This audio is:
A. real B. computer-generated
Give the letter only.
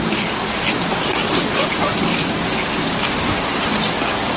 A